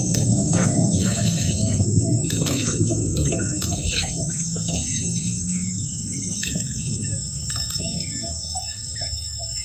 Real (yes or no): no